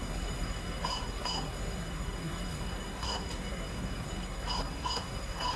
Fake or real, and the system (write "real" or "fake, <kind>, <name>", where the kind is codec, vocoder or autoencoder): fake, codec, SNAC